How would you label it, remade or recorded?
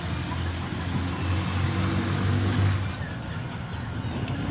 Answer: recorded